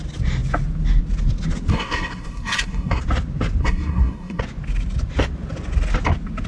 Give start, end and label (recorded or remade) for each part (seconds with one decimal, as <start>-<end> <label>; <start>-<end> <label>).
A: 0.0-1.7 recorded; 1.7-3.0 remade; 3.0-3.6 recorded; 3.6-4.4 remade; 4.4-6.5 recorded